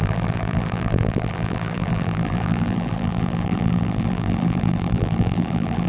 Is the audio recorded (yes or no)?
no